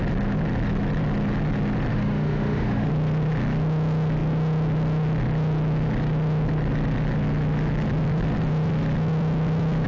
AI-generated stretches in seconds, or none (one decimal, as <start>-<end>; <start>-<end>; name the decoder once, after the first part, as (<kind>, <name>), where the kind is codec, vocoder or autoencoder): 1.9-2.9 (autoencoder, DAC-VAE)